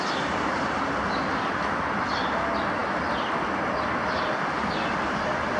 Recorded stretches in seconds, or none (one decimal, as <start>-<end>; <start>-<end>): 0.0-5.6